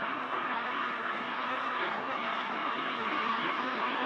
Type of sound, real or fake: fake